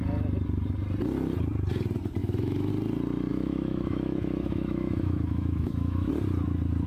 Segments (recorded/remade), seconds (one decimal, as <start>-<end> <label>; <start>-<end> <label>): 0.0-2.2 recorded; 2.2-2.7 remade; 2.7-3.3 recorded; 3.3-6.1 remade; 6.1-6.9 recorded